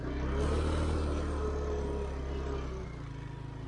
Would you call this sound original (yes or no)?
yes